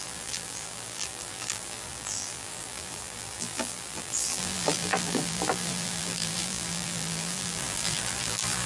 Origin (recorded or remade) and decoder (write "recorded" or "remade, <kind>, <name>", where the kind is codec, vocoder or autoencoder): remade, vocoder, BigVGAN v2